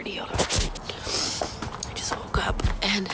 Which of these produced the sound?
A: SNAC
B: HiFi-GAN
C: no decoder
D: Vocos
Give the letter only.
C